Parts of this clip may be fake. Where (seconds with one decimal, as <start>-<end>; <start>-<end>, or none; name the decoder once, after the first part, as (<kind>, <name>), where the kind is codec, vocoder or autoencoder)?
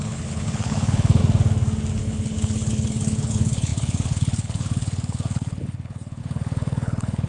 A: 0.0-1.2 (codec, HILCodec); 2.0-7.3